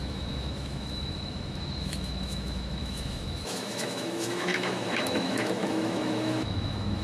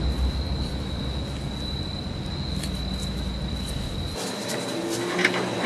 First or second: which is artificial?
first